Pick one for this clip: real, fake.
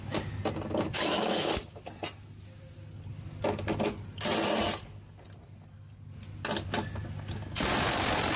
real